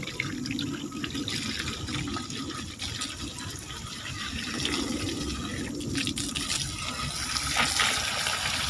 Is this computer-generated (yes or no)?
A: no